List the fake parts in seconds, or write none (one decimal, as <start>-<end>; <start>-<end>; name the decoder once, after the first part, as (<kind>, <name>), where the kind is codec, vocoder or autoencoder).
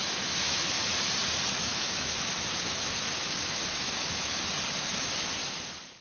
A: 0.0-0.9 (autoencoder, DAC-VAE); 1.6-4.4